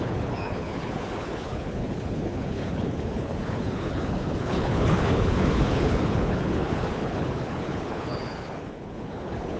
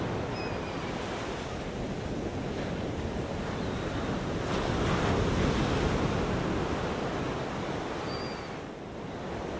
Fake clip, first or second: first